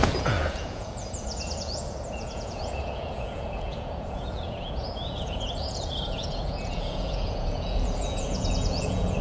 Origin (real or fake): fake